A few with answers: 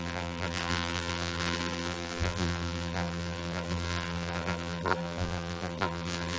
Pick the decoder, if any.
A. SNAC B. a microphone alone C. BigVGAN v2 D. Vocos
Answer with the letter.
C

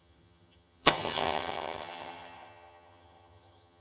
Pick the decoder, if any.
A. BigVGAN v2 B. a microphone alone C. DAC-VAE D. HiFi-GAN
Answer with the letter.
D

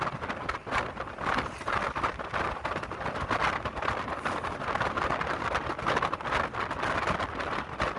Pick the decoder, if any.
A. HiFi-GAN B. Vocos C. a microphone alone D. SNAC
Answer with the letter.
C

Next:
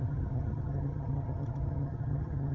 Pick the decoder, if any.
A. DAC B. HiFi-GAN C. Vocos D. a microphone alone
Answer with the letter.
B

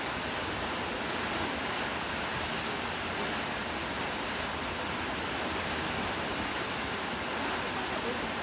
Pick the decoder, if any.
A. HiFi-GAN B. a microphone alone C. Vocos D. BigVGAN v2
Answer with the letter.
B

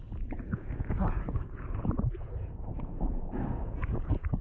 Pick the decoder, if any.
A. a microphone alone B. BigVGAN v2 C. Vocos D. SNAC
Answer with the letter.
C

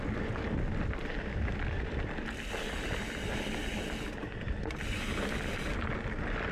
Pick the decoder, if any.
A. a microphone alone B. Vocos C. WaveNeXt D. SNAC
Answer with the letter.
A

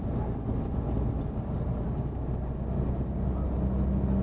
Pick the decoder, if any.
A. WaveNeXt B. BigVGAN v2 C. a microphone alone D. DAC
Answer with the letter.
C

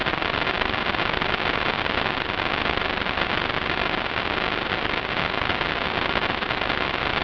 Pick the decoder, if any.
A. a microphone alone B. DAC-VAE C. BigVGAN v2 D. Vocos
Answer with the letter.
A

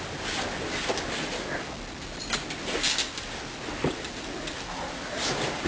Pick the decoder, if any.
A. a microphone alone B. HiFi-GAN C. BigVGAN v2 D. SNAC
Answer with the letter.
A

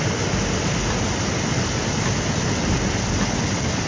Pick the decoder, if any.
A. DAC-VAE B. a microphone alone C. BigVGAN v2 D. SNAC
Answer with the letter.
B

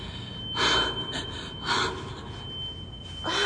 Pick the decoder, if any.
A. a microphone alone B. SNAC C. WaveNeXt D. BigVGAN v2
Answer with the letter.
A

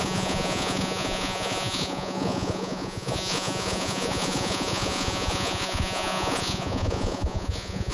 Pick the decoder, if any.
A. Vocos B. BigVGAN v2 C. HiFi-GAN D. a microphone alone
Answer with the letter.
A